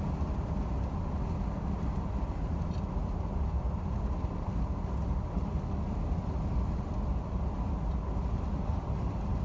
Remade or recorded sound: recorded